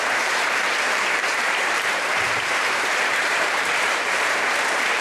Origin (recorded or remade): remade